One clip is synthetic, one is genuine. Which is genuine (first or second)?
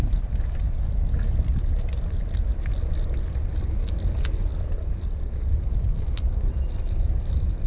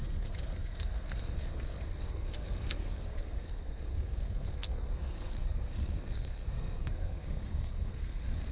first